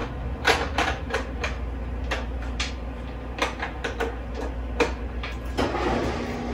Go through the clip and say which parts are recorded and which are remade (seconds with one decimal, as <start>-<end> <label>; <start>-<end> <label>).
0.0-6.5 recorded